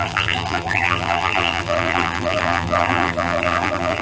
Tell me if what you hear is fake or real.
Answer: fake